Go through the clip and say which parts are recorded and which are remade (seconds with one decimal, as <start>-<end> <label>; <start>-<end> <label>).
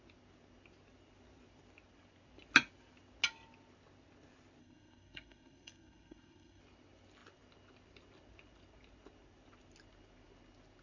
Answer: 0.0-4.6 recorded; 4.6-6.6 remade; 6.6-10.8 recorded